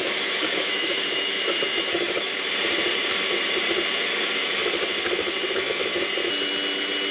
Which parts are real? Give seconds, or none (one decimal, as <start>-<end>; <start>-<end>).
2.3-4.0; 4.6-5.5; 5.9-7.1